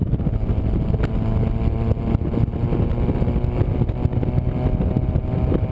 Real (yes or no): yes